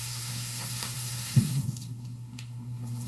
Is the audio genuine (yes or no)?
no